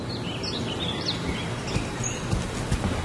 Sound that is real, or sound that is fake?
real